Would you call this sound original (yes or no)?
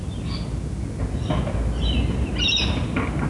yes